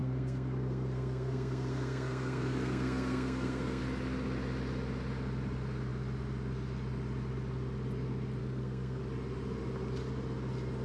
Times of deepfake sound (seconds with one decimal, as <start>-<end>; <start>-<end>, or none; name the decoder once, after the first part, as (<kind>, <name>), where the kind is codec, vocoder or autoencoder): 0.0-3.8 (codec, SNAC); 8.4-9.0